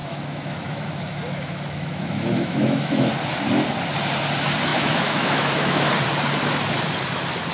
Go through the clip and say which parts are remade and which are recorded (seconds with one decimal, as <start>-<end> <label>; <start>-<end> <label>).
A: 0.0-3.1 remade; 3.1-4.7 recorded; 4.7-5.9 remade; 5.9-7.5 recorded